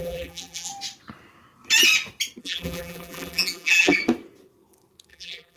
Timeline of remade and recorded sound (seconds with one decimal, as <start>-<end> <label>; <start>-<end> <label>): 0.0-0.7 remade; 0.7-2.4 recorded; 2.4-4.0 remade; 4.0-5.1 recorded; 5.1-5.6 remade